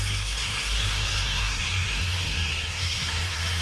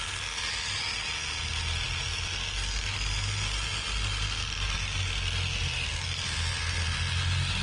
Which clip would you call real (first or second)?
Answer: second